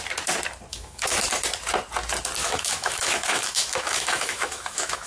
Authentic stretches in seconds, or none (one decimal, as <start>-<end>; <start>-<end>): 0.0-0.7; 1.3-2.4